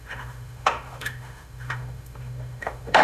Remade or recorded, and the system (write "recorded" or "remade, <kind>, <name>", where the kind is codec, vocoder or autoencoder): remade, autoencoder, DAC-VAE